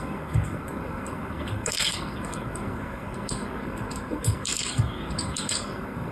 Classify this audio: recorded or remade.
remade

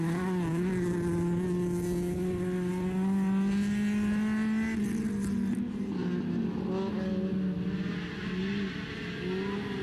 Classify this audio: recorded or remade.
recorded